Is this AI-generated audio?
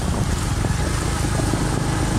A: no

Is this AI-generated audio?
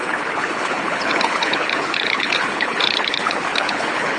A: yes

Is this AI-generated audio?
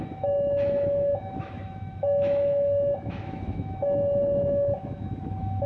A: yes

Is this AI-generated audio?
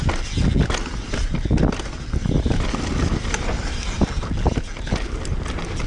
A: no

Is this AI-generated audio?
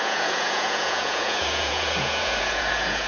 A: yes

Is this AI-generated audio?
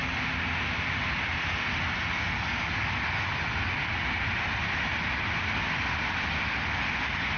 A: no